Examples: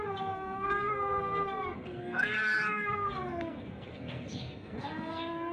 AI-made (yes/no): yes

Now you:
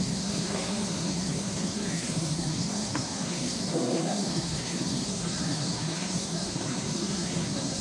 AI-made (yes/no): yes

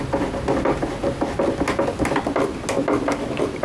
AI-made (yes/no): no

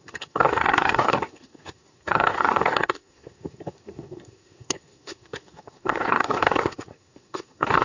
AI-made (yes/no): yes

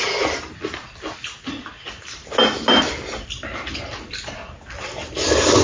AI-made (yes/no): no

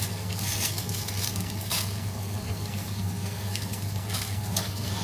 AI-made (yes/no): yes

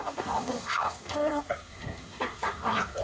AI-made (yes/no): yes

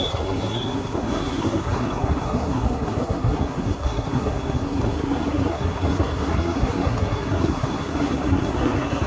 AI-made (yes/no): yes